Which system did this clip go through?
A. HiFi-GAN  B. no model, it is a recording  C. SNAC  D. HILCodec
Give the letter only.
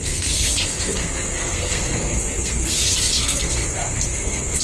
C